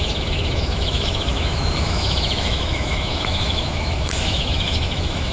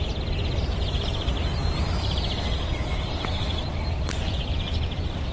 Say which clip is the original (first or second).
second